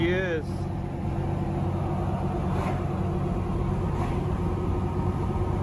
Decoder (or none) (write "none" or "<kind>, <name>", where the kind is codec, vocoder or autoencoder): none